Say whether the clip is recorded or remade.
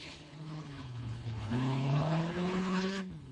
remade